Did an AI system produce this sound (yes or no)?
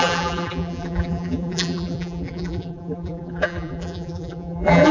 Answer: yes